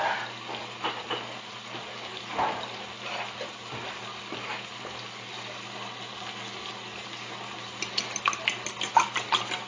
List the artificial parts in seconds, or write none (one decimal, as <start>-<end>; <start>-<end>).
none